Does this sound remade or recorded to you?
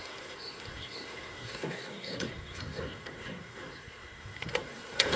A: remade